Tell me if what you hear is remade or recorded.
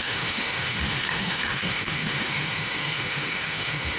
remade